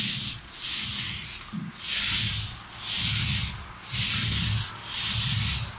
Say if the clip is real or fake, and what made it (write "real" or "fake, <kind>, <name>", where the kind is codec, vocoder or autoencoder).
real